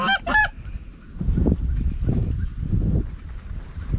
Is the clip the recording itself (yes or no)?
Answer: no